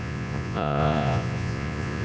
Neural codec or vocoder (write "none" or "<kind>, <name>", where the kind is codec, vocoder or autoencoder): vocoder, Vocos